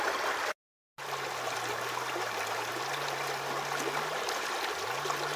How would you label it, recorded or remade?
recorded